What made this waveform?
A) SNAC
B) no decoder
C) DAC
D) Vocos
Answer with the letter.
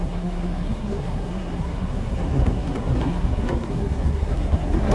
A